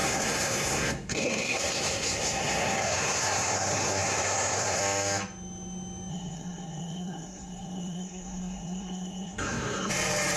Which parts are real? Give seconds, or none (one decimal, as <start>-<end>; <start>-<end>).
4.8-6.1; 9.9-10.4